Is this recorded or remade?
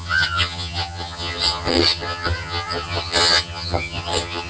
remade